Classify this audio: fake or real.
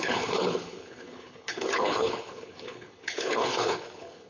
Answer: fake